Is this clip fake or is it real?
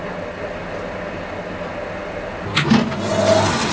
real